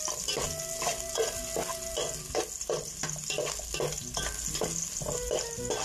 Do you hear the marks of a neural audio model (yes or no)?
no